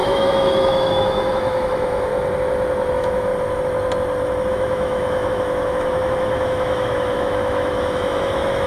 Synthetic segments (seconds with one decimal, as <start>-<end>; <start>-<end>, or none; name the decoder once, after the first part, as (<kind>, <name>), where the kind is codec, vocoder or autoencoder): 0.0-2.1 (autoencoder, DAC-VAE); 2.9-3.3; 4.5-8.7